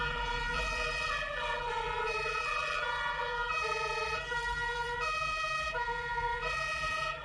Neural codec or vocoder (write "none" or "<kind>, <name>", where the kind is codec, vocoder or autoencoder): vocoder, BigVGAN v2